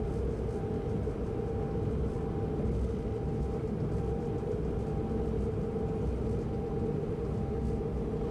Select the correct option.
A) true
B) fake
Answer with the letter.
A